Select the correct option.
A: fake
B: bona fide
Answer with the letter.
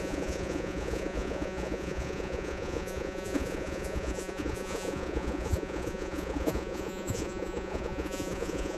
A